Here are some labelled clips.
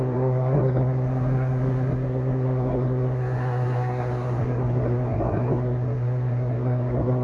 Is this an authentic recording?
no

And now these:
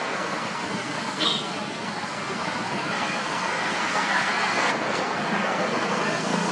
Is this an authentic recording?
no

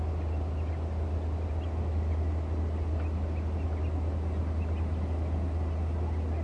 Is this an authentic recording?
yes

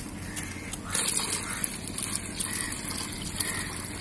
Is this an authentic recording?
yes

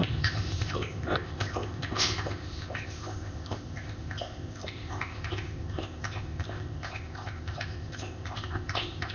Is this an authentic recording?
no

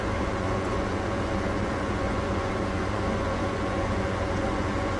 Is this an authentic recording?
no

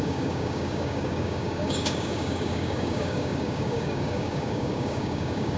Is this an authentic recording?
no